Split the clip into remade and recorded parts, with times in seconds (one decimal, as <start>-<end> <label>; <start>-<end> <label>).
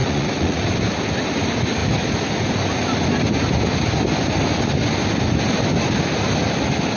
0.0-0.6 remade; 0.6-7.0 recorded